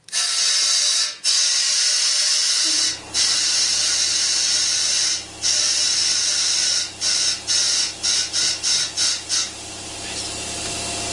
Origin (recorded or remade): recorded